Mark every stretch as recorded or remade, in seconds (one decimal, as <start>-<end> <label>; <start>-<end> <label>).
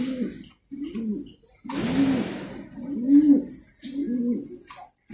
0.0-5.1 recorded